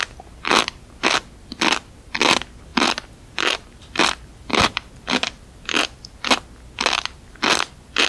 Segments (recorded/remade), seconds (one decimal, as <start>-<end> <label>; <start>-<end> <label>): 0.0-2.7 recorded; 2.7-6.1 remade; 6.1-8.1 recorded